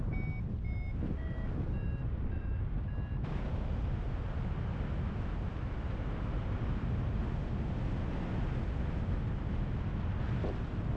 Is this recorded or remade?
recorded